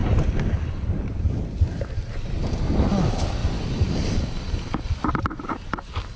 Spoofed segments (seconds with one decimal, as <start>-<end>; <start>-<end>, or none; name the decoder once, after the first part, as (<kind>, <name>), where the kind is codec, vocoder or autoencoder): none